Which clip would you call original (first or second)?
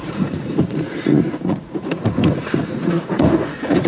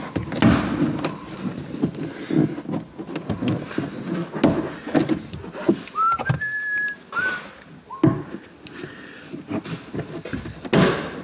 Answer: second